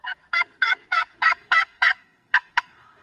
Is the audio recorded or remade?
remade